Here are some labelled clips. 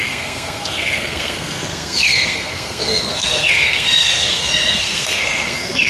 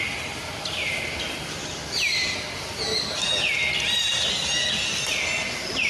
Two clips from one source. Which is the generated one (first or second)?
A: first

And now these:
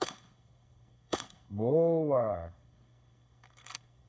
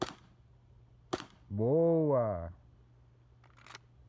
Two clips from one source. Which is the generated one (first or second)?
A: first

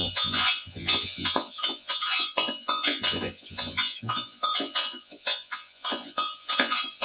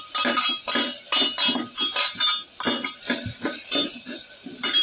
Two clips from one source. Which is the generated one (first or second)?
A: first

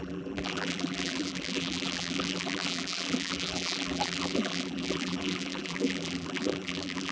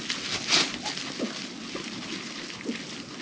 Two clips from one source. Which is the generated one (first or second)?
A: first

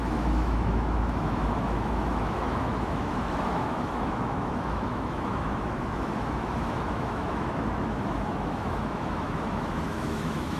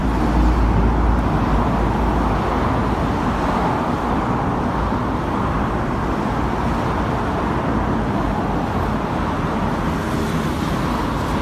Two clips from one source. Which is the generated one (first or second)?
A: first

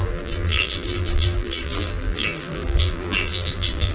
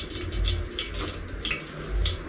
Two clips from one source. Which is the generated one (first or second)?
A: first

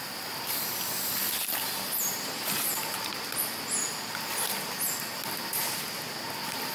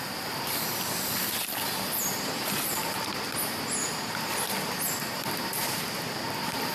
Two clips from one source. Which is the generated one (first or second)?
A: second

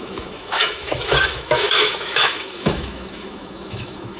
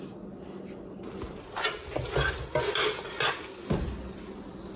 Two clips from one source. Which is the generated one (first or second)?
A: first